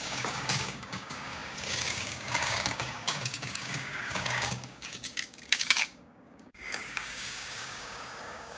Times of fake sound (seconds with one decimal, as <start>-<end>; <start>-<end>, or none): 0.0-8.6